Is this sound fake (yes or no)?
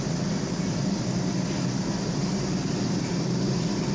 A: no